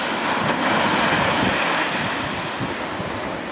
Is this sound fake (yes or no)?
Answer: no